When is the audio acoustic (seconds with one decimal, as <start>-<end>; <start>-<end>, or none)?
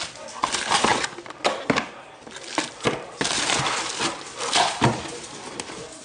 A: 0.9-2.0